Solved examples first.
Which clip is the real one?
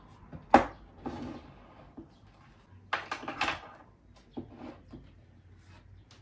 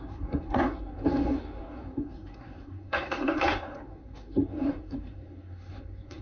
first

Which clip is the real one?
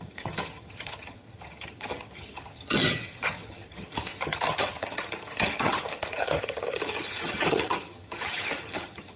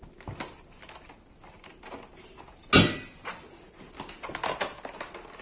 second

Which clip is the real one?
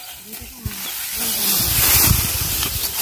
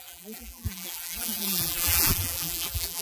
first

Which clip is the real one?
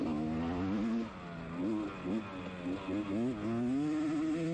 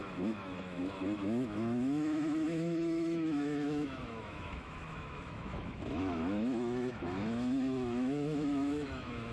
first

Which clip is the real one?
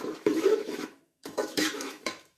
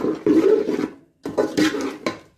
second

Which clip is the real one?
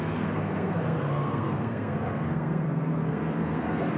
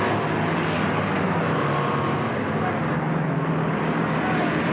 second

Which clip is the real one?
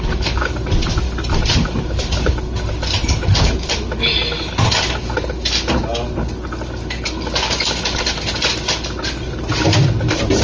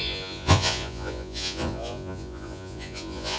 first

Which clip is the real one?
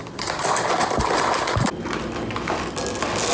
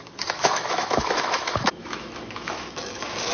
first